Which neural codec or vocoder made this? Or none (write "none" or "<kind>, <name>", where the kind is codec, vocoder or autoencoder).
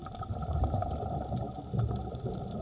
none